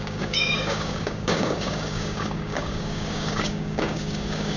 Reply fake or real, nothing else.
fake